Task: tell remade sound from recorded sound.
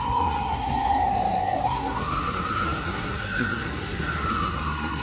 remade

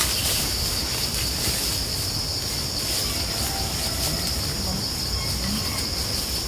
recorded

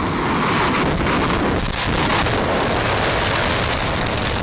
recorded